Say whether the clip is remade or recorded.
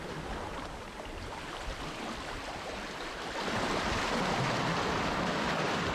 recorded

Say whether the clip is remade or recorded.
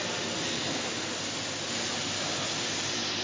recorded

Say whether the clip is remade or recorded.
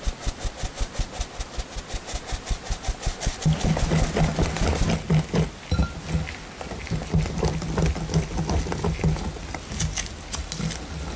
recorded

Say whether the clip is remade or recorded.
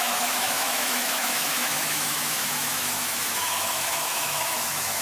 remade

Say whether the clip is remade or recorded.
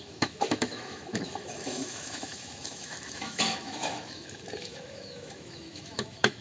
remade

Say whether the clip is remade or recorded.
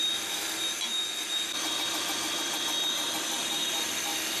recorded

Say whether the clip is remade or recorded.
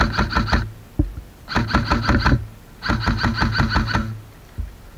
recorded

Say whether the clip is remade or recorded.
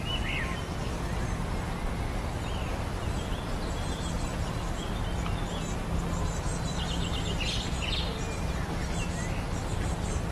recorded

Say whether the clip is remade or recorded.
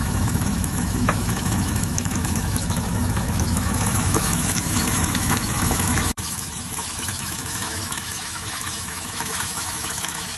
remade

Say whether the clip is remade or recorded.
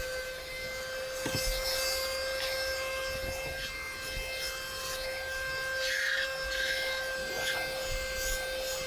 recorded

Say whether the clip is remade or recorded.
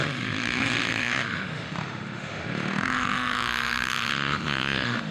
remade